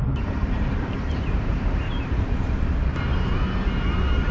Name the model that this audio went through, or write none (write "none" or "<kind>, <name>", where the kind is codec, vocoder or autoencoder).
vocoder, BigVGAN v2